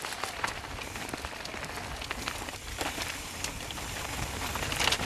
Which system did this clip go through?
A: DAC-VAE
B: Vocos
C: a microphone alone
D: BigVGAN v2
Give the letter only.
C